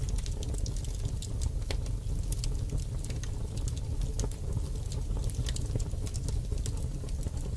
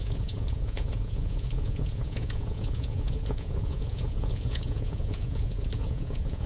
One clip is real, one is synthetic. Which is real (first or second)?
first